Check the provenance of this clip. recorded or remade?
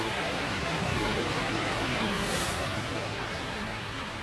remade